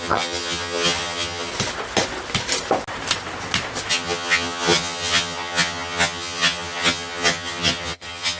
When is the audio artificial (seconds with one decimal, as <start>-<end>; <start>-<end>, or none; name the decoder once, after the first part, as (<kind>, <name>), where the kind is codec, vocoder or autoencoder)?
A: 0.0-1.5 (vocoder, HiFi-GAN); 3.9-8.4